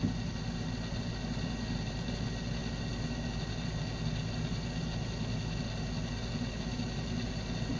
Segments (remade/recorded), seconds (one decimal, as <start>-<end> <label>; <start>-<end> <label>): 0.0-7.8 recorded